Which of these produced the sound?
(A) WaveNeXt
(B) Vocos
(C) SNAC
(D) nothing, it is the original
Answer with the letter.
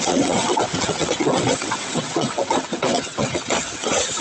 A